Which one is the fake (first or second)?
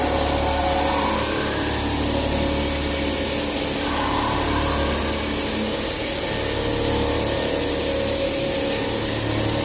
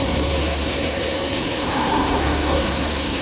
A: second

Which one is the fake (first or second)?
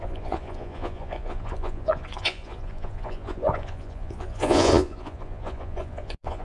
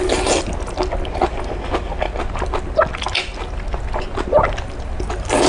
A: first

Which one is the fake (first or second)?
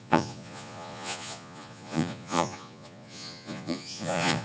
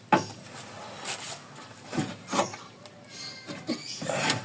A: first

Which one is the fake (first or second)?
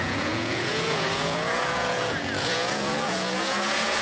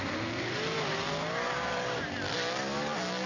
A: first